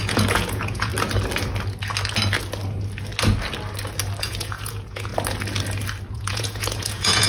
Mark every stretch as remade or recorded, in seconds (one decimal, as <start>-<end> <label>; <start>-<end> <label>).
0.0-0.9 remade; 0.9-4.2 recorded; 4.2-5.1 remade; 5.1-6.1 recorded; 6.1-7.3 remade